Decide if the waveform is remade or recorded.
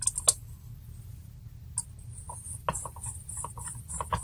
recorded